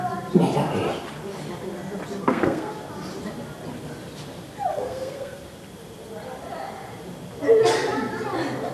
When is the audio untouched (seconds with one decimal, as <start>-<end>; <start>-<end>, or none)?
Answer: 0.0-2.2; 2.7-4.7; 5.4-8.7